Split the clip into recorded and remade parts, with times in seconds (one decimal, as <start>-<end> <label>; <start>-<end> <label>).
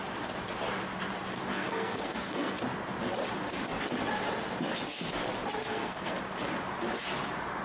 0.0-1.5 recorded; 1.5-2.6 remade; 2.6-5.6 recorded; 5.6-6.2 remade; 6.2-7.6 recorded